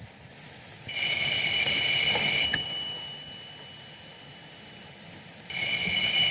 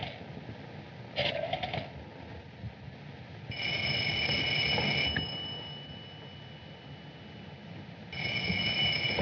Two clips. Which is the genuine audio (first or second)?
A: second